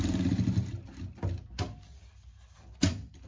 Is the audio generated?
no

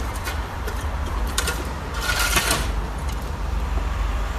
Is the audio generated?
yes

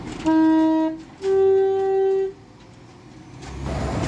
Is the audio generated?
no